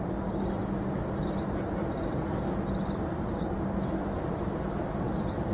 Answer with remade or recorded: recorded